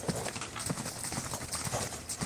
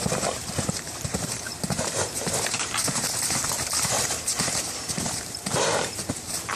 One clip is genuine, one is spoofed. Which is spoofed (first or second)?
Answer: second